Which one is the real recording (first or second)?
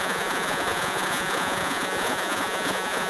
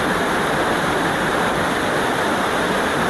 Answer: second